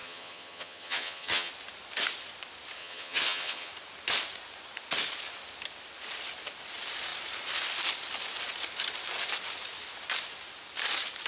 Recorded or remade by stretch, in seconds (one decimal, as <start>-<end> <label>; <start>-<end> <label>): 0.0-1.5 remade; 1.5-2.8 recorded; 2.8-3.7 remade; 3.7-11.3 recorded